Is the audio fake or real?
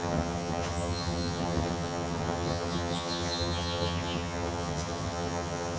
fake